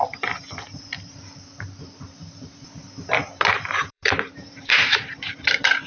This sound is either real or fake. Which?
fake